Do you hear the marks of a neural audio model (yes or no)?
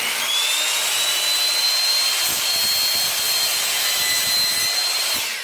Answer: no